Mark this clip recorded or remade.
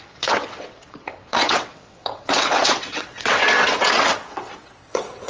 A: remade